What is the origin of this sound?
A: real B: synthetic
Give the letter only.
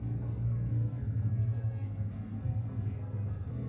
B